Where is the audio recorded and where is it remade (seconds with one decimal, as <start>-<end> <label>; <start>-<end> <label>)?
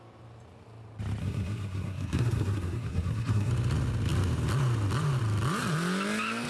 0.0-1.2 recorded; 1.2-3.5 remade; 3.5-6.5 recorded